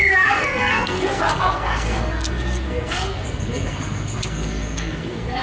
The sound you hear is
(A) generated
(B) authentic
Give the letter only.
A